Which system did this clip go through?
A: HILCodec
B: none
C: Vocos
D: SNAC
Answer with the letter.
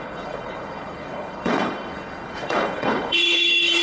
A